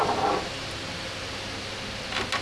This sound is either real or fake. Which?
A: real